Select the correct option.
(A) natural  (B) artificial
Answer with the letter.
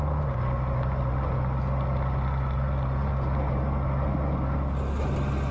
A